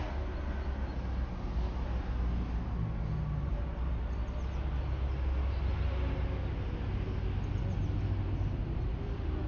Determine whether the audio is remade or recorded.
recorded